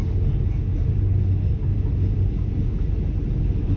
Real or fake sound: real